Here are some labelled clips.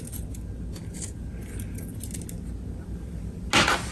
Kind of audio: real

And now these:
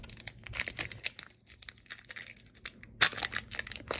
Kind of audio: real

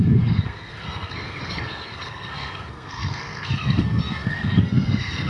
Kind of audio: fake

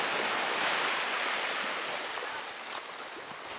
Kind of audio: real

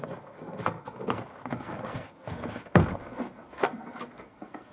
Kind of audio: fake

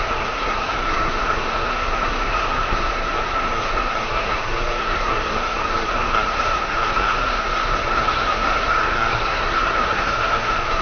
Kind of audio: fake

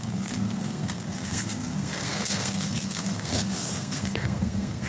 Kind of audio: fake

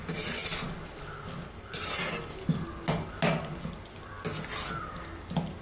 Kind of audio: real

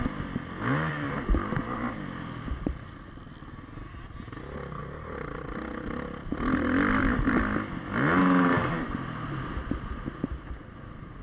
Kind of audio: real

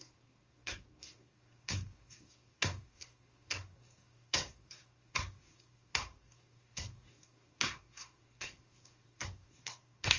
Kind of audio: fake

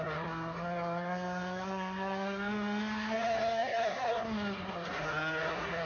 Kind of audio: fake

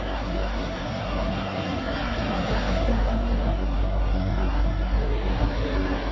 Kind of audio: fake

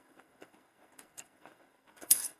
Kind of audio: fake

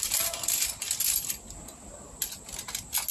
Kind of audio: real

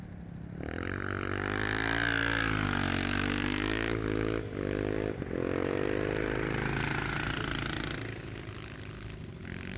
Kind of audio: real